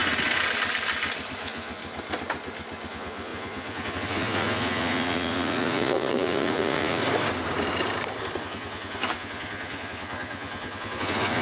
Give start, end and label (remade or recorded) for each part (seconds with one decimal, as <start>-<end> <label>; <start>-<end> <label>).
0.0-1.4 recorded; 1.4-1.8 remade; 1.8-2.9 recorded; 2.9-7.0 remade; 7.0-8.4 recorded; 8.4-11.4 remade